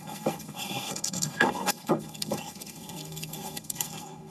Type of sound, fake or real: fake